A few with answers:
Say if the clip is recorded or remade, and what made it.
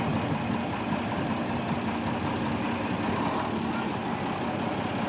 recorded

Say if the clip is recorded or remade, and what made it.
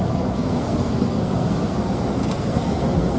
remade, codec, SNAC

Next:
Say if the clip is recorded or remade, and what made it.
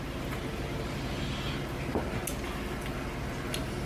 recorded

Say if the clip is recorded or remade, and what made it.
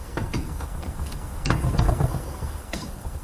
remade, codec, SNAC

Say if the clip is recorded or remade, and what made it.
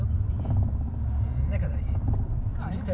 remade, vocoder, BigVGAN v2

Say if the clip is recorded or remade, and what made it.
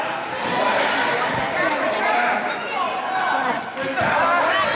recorded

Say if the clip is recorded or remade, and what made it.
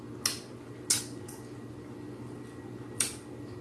recorded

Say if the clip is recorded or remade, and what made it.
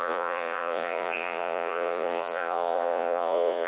remade, vocoder, Vocos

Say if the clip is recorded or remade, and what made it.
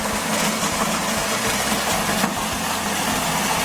recorded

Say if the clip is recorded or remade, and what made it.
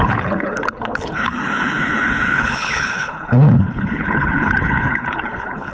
remade, codec, HILCodec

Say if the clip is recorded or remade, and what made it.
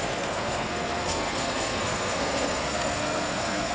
remade, codec, SNAC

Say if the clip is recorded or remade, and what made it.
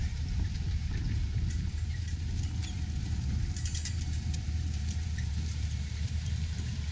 remade, vocoder, BigVGAN v2